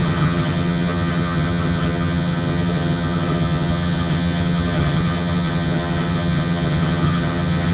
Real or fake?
fake